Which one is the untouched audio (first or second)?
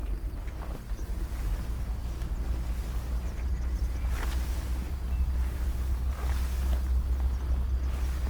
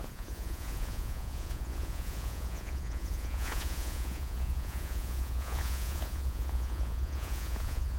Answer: first